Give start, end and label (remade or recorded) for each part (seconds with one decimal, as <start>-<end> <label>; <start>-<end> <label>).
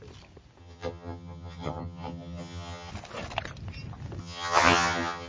0.0-0.6 recorded; 0.6-2.9 remade; 2.9-4.2 recorded; 4.2-5.3 remade